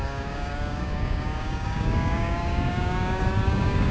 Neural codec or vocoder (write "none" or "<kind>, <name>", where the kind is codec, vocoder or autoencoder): codec, DAC